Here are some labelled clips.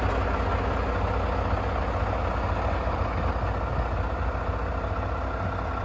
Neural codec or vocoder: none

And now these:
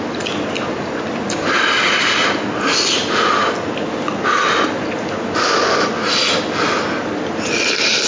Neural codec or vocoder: none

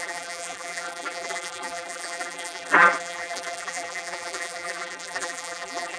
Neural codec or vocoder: vocoder, BigVGAN v2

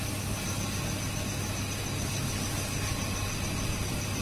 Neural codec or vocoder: none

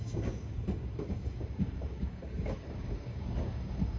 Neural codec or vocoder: codec, DAC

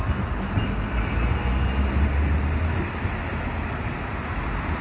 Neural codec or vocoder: none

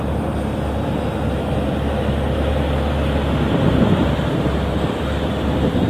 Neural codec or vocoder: none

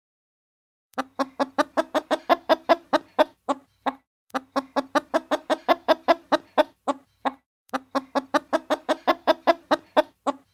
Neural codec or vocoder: vocoder, BigVGAN v2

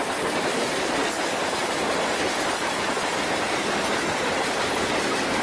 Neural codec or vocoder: none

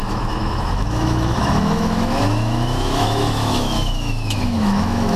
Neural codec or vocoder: autoencoder, DAC-VAE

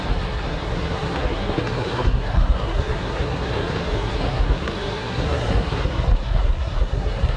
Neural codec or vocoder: codec, SNAC